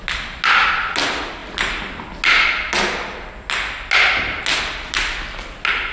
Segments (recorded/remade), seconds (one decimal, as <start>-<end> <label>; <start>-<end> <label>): 0.0-5.9 recorded